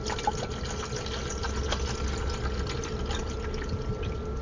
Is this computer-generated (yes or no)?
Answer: no